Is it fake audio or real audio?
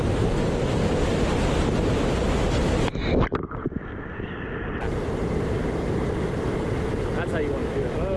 real